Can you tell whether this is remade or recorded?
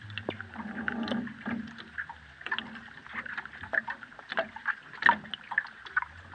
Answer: recorded